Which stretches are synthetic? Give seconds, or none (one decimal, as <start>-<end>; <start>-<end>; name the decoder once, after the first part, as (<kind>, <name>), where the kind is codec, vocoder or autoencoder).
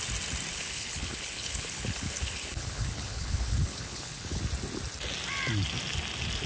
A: 0.5-4.4 (codec, HILCodec)